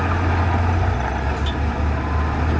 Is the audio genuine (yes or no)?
yes